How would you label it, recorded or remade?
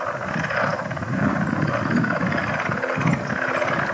recorded